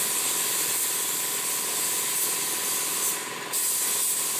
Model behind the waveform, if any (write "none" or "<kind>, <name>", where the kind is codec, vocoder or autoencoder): none